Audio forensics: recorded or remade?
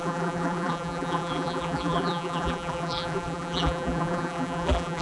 remade